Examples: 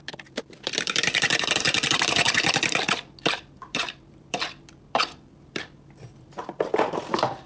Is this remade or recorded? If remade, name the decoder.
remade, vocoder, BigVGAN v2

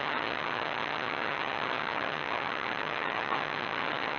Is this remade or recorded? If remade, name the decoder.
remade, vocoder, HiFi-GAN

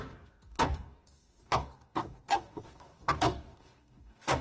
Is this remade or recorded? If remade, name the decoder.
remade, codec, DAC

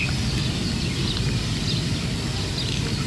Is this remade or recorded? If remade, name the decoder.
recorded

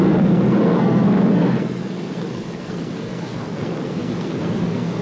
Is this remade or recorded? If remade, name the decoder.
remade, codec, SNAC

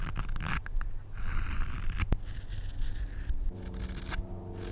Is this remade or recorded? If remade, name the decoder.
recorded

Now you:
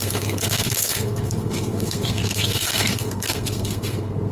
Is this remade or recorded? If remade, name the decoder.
remade, codec, SNAC